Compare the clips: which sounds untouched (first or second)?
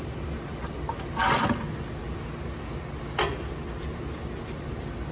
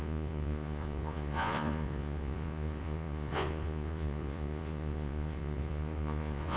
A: first